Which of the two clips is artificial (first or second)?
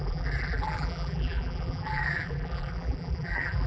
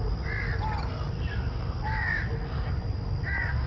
first